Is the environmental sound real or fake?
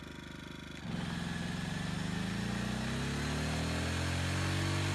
real